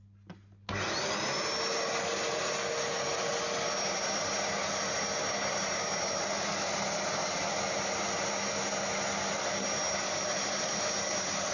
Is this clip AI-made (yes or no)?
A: no